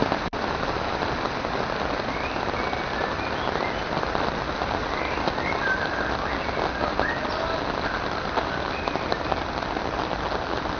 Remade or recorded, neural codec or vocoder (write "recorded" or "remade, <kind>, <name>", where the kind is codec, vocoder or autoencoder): recorded